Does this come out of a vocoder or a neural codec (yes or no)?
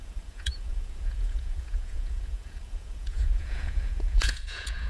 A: yes